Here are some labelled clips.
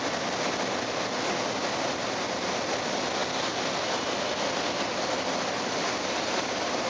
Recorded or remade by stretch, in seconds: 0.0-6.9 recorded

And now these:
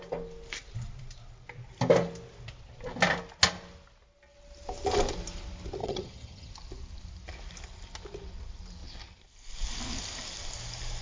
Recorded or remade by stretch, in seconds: 0.0-5.8 recorded; 5.8-6.5 remade; 6.5-11.0 recorded

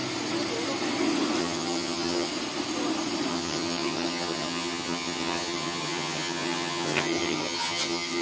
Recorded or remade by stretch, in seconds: 0.0-1.4 recorded; 1.4-2.3 remade; 2.3-3.3 recorded; 3.3-8.2 remade

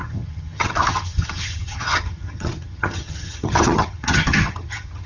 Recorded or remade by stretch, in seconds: 0.0-5.1 remade

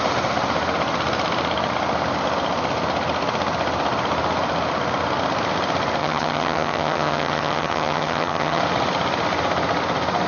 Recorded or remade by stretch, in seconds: 0.0-6.0 recorded; 6.0-8.6 remade; 8.6-10.3 recorded

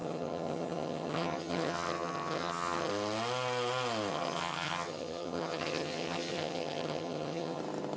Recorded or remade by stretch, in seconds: 0.0-2.9 remade; 2.9-4.1 recorded; 4.1-7.6 remade; 7.6-8.0 recorded

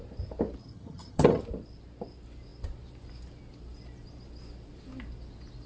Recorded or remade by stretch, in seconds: 0.0-0.6 recorded; 0.6-1.4 remade; 1.4-5.7 recorded

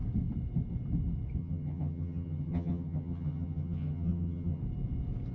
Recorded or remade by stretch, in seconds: 0.0-1.4 recorded; 1.4-4.6 remade; 4.6-5.3 recorded